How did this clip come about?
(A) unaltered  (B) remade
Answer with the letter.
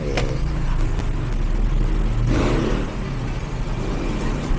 A